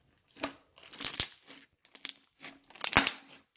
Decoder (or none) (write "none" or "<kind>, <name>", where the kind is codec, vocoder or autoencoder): none